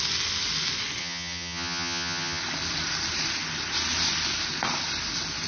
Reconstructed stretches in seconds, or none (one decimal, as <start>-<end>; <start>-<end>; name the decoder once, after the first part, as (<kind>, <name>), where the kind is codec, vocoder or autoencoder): 1.0-2.4 (vocoder, HiFi-GAN)